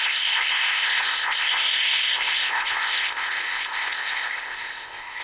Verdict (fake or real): fake